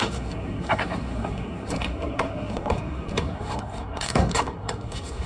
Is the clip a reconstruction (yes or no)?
yes